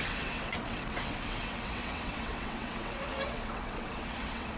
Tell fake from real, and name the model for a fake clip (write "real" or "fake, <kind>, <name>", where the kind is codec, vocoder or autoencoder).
fake, vocoder, WaveNeXt